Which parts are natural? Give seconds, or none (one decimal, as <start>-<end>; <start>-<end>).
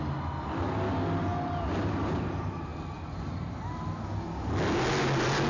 0.0-5.5